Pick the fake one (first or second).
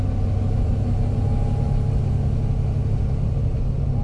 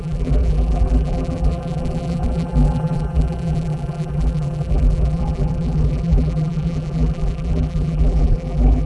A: second